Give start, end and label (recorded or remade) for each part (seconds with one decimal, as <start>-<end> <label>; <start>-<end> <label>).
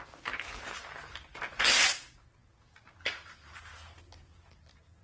0.0-3.7 remade; 3.7-4.2 recorded; 4.2-5.0 remade